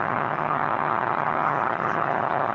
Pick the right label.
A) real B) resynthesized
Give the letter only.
B